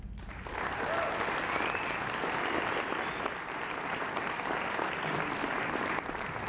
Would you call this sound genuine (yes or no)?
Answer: yes